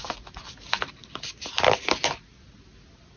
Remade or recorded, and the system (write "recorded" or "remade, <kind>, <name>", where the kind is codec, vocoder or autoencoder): recorded